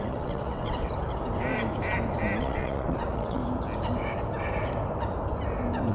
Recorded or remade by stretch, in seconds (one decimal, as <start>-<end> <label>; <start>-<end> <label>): 0.0-0.9 remade; 0.9-2.4 recorded; 2.4-3.4 remade; 3.4-5.9 recorded

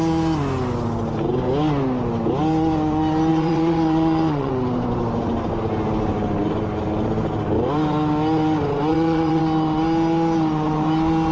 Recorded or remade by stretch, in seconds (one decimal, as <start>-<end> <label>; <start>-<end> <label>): 0.0-3.3 recorded; 3.3-4.5 remade; 4.5-8.9 recorded; 8.9-9.4 remade; 9.4-11.3 recorded

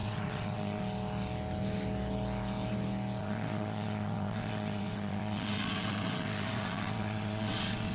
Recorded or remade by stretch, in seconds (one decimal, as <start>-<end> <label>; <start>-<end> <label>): 0.0-0.8 remade; 0.8-3.2 recorded; 3.2-7.9 remade